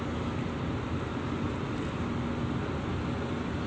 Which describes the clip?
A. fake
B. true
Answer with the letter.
B